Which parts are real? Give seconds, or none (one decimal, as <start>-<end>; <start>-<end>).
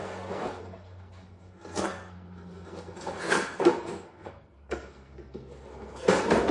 none